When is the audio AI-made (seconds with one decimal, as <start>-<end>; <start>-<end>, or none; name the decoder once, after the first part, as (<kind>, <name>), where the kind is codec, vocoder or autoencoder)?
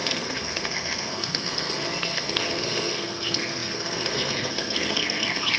0.0-5.6 (codec, SNAC)